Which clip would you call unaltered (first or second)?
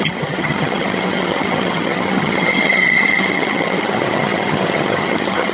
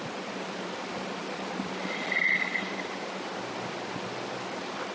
second